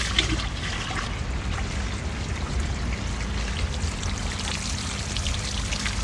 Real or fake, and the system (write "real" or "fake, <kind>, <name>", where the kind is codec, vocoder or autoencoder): real